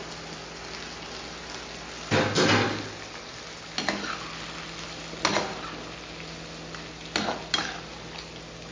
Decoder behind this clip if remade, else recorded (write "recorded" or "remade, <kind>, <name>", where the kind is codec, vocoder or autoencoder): recorded